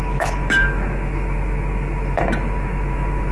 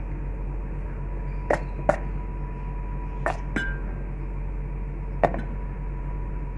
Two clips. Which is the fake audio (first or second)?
first